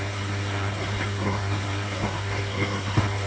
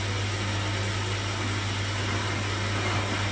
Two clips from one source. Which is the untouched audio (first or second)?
second